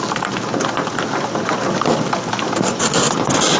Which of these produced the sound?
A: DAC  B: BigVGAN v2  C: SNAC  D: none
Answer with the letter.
D